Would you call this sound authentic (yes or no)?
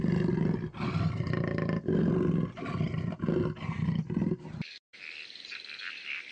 yes